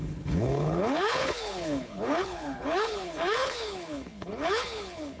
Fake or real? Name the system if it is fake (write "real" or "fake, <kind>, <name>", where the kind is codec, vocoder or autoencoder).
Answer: fake, codec, HILCodec